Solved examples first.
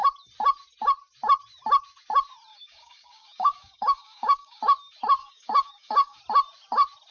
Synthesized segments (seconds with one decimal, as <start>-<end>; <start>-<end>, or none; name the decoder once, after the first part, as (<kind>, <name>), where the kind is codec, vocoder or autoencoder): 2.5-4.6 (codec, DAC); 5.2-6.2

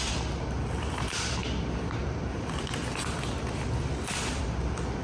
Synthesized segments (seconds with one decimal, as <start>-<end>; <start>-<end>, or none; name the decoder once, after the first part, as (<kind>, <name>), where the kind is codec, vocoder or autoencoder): none

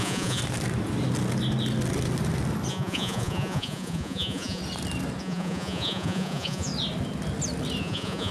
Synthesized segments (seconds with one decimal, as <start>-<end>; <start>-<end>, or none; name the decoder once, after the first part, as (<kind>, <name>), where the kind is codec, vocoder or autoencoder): 0.0-0.4 (vocoder, Vocos); 2.7-4.6; 5.2-6.7; 7.8-8.3

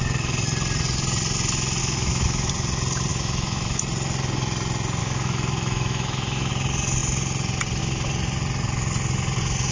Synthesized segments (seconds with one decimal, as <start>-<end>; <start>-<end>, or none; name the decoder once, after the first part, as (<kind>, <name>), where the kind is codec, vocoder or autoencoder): 1.8-2.5 (autoencoder, DAC-VAE); 3.1-3.8; 5.0-6.5